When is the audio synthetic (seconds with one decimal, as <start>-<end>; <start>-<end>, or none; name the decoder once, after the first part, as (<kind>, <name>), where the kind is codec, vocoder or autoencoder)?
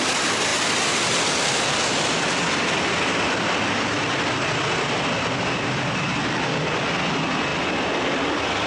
none